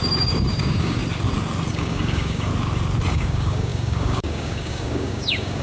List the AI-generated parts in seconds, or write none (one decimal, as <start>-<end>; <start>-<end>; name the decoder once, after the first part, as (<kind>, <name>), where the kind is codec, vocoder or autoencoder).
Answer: 0.0-1.0 (codec, DAC); 1.7-2.5; 3.1-5.6

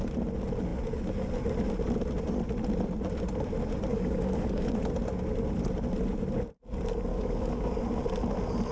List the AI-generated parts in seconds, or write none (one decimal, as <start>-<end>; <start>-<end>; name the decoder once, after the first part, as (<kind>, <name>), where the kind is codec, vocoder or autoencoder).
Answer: 3.9-4.8 (codec, DAC); 7.1-7.8

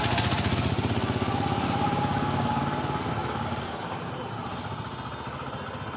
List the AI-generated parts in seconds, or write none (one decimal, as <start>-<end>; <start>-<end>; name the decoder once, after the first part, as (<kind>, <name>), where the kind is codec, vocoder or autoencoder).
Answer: 2.1-2.6 (codec, DAC); 3.2-4.1

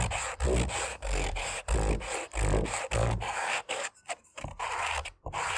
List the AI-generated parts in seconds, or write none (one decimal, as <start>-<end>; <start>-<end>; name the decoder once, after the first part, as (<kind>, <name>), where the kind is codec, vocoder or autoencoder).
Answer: 0.9-1.6 (codec, DAC); 3.0-3.9

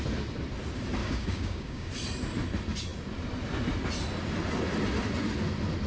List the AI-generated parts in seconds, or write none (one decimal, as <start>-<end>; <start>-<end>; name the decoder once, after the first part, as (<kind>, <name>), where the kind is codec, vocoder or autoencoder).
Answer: 1.0-1.9 (codec, DAC)